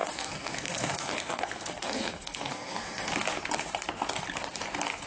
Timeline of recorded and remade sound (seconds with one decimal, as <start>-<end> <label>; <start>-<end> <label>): 0.0-3.1 remade; 3.1-5.1 recorded